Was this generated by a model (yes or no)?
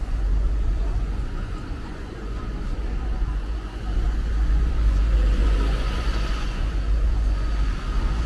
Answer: yes